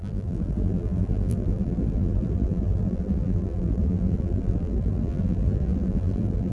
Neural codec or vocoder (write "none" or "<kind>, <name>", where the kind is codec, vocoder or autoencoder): vocoder, BigVGAN v2